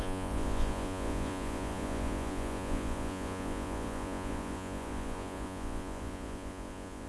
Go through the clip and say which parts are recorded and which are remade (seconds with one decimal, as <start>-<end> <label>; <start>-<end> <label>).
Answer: 0.0-7.1 remade